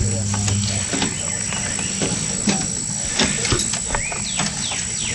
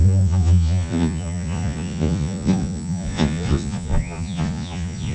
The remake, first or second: second